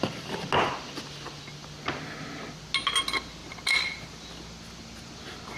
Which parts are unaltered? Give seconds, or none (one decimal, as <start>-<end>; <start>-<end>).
0.0-5.6